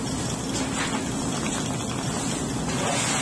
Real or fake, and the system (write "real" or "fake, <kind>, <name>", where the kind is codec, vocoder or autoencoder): real